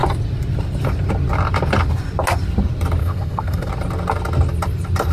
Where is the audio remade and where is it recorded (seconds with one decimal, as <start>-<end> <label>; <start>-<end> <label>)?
0.0-3.0 recorded; 3.0-3.7 remade; 3.7-5.1 recorded

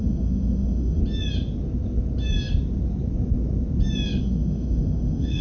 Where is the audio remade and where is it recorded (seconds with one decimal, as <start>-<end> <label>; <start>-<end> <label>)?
0.0-1.0 remade; 1.0-4.2 recorded; 4.2-5.4 remade

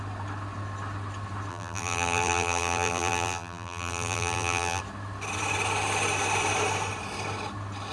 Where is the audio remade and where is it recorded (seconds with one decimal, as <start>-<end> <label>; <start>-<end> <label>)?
0.0-1.5 recorded; 1.5-4.8 remade; 4.8-7.9 recorded

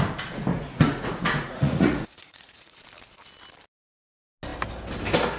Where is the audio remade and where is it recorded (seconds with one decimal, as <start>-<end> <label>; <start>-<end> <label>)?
0.0-0.5 recorded; 0.5-2.8 remade; 2.8-5.4 recorded

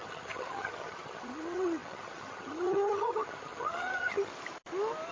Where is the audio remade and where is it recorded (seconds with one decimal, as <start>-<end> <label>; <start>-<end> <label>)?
0.0-4.3 remade; 4.3-5.1 recorded

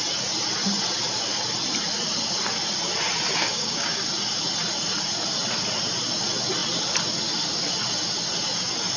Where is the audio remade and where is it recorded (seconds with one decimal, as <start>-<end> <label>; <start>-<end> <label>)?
0.0-3.4 recorded; 3.4-4.0 remade; 4.0-9.0 recorded

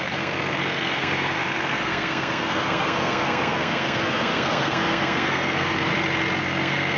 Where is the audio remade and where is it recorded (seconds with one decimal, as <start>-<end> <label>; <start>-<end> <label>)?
0.0-5.9 remade; 5.9-6.4 recorded; 6.4-7.0 remade

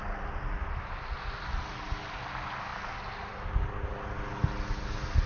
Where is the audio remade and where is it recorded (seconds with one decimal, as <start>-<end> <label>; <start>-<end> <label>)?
0.0-5.3 recorded